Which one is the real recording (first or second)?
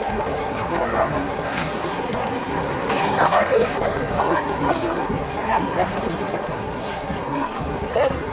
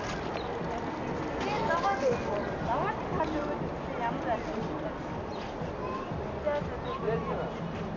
second